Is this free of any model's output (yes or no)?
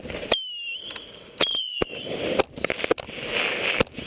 yes